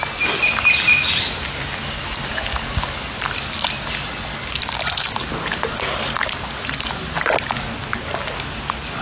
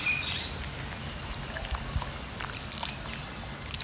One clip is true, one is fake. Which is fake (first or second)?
second